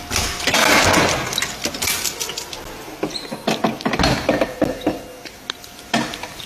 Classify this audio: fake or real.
real